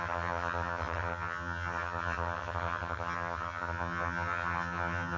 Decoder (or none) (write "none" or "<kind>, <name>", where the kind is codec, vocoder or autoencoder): vocoder, HiFi-GAN